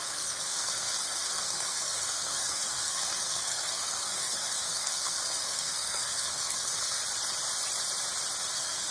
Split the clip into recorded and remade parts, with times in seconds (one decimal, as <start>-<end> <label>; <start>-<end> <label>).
0.0-7.0 remade; 7.0-8.5 recorded; 8.5-8.9 remade